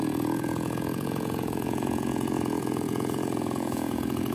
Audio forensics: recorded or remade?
remade